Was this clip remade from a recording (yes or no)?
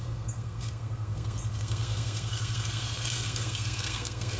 yes